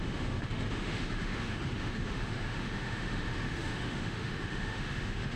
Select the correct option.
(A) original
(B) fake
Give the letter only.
B